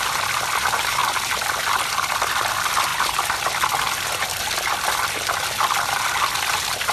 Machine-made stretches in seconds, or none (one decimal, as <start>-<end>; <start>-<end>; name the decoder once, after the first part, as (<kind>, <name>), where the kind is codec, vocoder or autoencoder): none